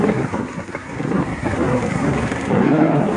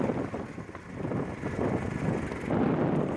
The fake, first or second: first